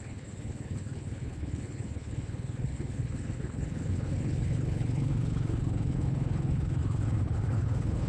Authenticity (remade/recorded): remade